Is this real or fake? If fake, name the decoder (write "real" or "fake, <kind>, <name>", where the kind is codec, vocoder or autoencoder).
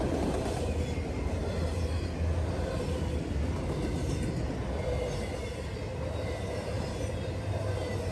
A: real